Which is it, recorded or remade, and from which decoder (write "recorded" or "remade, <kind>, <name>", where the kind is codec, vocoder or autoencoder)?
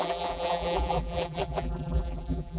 remade, vocoder, BigVGAN v2